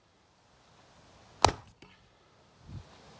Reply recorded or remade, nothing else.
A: recorded